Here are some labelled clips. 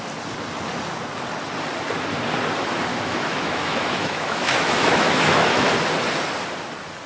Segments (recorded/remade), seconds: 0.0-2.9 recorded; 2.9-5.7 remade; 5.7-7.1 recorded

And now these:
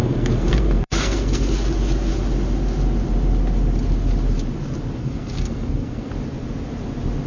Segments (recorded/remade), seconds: 0.0-1.6 remade; 1.6-5.0 recorded; 5.0-6.1 remade; 6.1-7.3 recorded

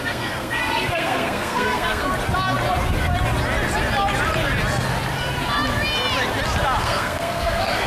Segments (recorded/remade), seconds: 0.0-2.1 remade; 2.1-6.8 recorded; 6.8-7.9 remade

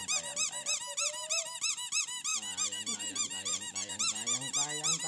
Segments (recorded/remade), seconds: 0.0-2.3 recorded; 2.3-3.9 remade; 3.9-5.1 recorded

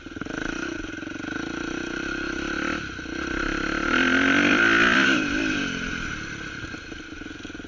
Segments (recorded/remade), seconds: 0.0-7.7 remade

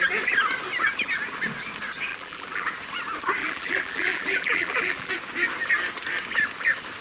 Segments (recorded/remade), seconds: 0.0-2.1 recorded; 2.1-2.7 remade; 2.7-3.4 recorded; 3.4-5.1 remade; 5.1-7.0 recorded